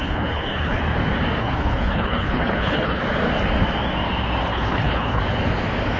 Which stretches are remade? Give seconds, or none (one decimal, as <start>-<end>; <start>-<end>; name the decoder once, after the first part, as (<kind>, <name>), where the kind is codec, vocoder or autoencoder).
0.0-0.8 (codec, HILCodec); 1.4-3.0; 4.5-5.2